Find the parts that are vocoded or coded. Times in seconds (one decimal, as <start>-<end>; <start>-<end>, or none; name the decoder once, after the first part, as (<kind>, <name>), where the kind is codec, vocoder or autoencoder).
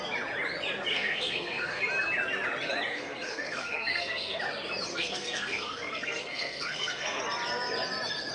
0.9-1.8 (codec, SNAC); 2.9-4.4; 4.9-7.2